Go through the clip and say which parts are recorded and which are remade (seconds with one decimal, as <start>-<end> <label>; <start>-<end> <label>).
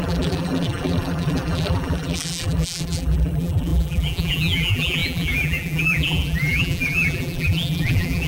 0.0-8.3 remade